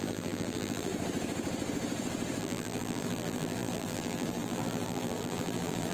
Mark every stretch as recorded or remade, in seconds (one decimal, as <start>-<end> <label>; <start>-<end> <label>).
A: 0.0-0.9 remade; 0.9-2.4 recorded; 2.4-5.9 remade